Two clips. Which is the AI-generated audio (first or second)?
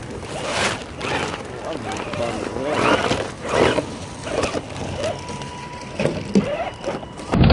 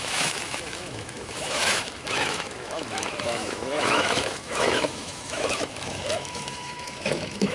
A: second